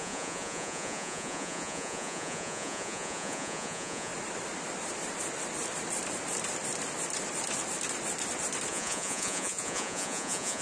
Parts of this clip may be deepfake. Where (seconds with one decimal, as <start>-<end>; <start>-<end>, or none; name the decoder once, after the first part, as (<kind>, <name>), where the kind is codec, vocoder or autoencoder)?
0.0-4.1 (vocoder, Vocos); 8.7-10.6